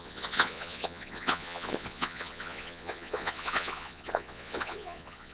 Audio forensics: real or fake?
fake